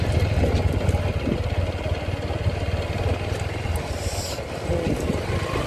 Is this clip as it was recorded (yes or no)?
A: yes